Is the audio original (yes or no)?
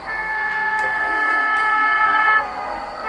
no